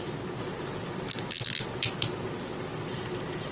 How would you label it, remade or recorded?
recorded